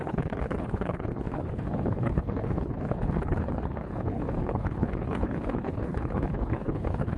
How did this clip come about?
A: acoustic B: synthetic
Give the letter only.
B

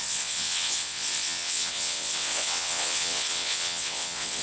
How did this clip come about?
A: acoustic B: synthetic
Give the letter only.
B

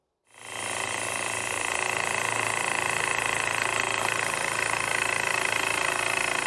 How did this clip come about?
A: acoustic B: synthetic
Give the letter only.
A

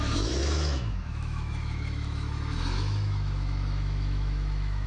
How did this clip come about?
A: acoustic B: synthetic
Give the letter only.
B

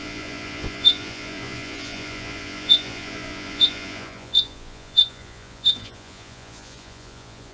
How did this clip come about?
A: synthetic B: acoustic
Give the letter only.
A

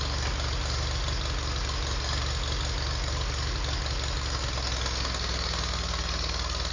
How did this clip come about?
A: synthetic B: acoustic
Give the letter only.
B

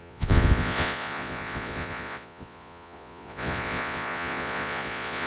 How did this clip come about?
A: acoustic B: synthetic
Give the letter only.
B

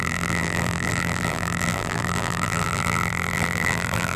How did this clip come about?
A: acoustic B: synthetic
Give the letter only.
B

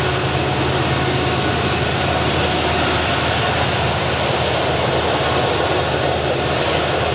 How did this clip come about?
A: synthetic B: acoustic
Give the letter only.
B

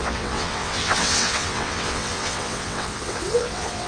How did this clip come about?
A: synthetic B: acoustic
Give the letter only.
A